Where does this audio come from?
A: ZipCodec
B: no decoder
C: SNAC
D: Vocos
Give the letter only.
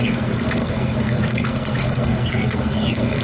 C